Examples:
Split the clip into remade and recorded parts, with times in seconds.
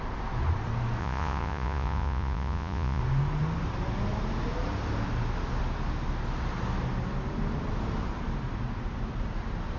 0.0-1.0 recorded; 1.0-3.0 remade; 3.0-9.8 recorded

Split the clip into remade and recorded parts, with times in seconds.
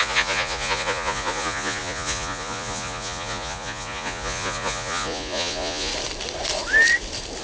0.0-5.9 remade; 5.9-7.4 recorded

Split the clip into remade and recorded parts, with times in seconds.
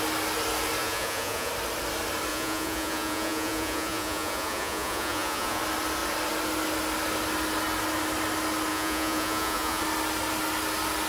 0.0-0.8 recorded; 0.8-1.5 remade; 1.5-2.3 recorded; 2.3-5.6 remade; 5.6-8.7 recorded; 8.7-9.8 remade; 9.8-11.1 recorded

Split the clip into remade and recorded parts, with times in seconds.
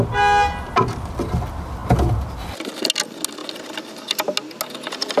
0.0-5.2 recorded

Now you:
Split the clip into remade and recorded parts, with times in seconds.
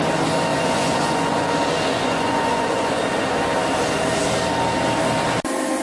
0.0-0.5 recorded; 0.5-1.5 remade; 1.5-1.9 recorded; 1.9-3.0 remade; 3.0-5.8 recorded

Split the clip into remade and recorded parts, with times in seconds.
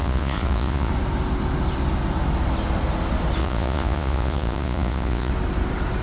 0.0-0.9 remade; 0.9-3.4 recorded; 3.4-5.3 remade; 5.3-6.0 recorded